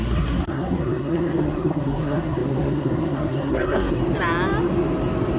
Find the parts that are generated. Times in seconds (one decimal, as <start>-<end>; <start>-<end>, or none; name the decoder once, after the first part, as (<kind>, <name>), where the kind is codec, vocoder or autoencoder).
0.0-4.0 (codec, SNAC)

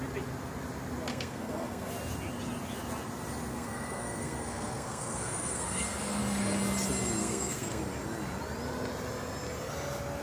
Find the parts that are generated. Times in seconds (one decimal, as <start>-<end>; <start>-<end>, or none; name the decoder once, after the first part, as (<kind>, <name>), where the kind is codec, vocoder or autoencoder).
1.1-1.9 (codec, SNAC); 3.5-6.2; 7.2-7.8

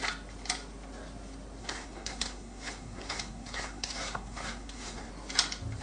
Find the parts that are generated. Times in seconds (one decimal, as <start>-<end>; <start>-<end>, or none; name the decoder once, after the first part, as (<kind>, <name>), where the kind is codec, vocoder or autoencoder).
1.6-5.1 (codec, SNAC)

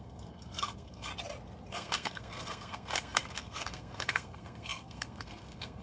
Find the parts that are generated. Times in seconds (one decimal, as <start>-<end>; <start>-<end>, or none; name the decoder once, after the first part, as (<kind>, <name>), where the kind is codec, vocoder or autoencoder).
0.0-1.1 (codec, SNAC); 1.7-5.8